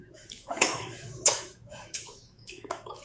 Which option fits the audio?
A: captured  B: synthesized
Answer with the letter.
B